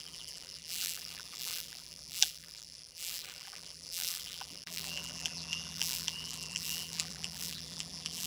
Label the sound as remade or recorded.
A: remade